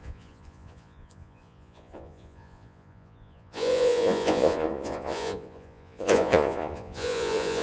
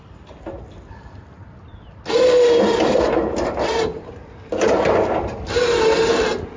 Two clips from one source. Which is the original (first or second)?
second